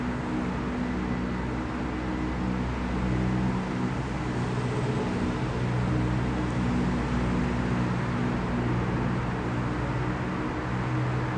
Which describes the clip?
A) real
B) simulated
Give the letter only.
A